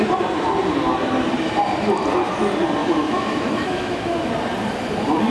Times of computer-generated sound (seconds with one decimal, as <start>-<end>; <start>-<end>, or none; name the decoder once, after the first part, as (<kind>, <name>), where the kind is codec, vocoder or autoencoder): 2.8-4.3 (autoencoder, DAC-VAE)